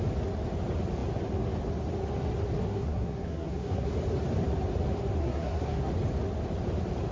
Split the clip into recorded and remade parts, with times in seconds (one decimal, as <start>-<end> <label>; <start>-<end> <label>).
0.0-2.6 recorded; 2.6-3.9 remade; 3.9-5.2 recorded; 5.2-5.9 remade; 5.9-7.1 recorded